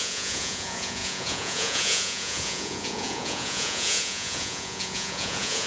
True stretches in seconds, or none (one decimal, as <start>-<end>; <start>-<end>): none